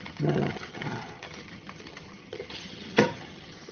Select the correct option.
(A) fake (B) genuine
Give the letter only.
A